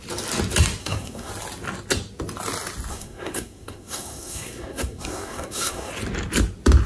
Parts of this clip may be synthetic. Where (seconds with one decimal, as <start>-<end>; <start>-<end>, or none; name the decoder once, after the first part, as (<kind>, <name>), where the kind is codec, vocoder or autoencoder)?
0.8-1.3 (codec, SNAC); 2.9-5.9